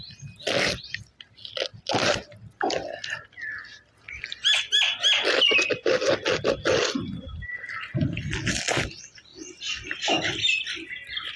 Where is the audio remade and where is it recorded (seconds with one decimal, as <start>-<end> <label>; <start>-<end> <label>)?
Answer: 0.0-9.3 recorded; 9.3-10.2 remade; 10.2-11.4 recorded